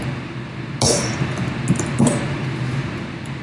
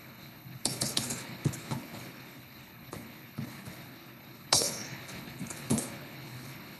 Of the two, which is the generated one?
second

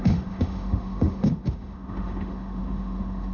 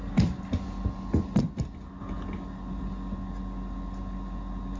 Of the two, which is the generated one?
first